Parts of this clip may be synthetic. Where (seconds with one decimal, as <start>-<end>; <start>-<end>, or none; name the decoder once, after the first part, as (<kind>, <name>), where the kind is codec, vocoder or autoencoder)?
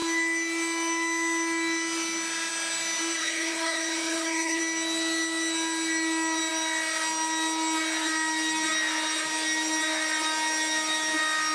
3.2-4.6 (codec, HILCodec)